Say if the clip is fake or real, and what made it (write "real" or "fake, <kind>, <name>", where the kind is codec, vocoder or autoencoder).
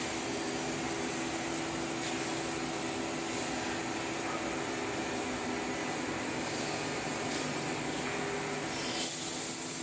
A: real